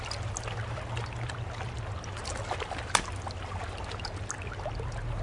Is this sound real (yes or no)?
yes